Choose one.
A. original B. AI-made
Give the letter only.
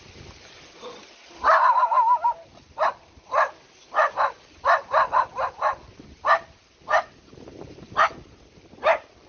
A